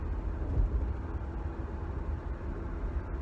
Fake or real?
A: real